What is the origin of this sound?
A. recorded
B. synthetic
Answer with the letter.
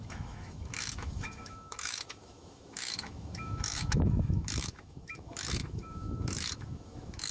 B